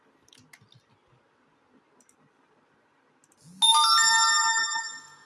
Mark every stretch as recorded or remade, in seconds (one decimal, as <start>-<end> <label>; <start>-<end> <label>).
0.0-4.6 recorded; 4.6-5.3 remade